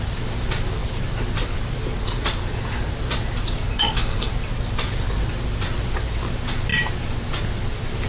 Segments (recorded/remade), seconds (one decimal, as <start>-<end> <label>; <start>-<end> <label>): 0.0-3.7 recorded; 3.7-4.3 remade; 4.3-8.1 recorded

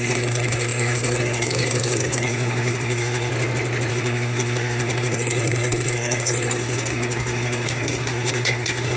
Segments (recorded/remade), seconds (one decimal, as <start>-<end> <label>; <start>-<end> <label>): 0.0-3.3 remade; 3.3-3.9 recorded; 3.9-9.0 remade

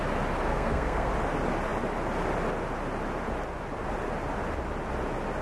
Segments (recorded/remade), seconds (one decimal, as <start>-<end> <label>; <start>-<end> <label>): 0.0-0.5 recorded; 0.5-1.1 remade; 1.1-5.4 recorded

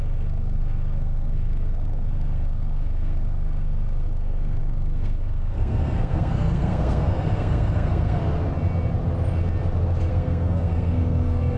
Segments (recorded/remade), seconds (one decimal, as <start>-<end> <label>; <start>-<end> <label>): 0.0-8.2 remade; 8.2-10.1 recorded; 10.1-11.6 remade

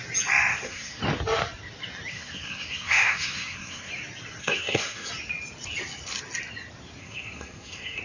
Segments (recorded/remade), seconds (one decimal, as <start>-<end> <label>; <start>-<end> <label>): 0.0-0.5 recorded; 0.5-1.0 remade; 1.0-2.1 recorded; 2.1-3.9 remade; 3.9-4.4 recorded; 4.4-5.1 remade; 5.1-7.0 recorded; 7.0-8.0 remade

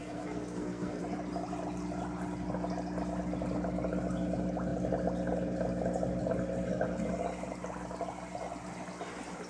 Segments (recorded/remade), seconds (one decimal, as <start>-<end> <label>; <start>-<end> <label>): 0.0-1.0 remade; 1.0-9.5 recorded

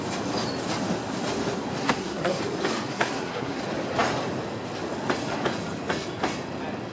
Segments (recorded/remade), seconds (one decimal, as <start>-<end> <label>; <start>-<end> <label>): 0.0-1.8 recorded; 1.8-2.4 remade; 2.4-2.9 recorded; 2.9-3.6 remade; 3.6-6.9 recorded

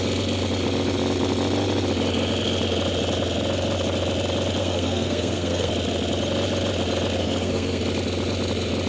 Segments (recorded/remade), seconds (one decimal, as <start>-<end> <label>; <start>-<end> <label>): 0.0-4.6 recorded; 4.6-5.7 remade; 5.7-7.2 recorded; 7.2-7.8 remade; 7.8-8.9 recorded